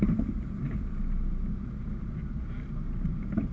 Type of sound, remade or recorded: recorded